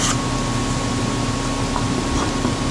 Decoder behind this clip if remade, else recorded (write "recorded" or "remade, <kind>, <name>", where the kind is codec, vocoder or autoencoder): recorded